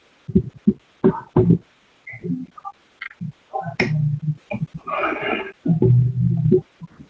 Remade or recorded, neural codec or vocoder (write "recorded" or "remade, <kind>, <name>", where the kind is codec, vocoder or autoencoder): recorded